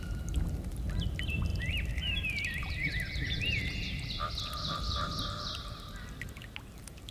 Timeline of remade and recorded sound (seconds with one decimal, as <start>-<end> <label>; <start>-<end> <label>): 0.0-1.5 recorded; 1.5-5.8 remade; 5.8-7.1 recorded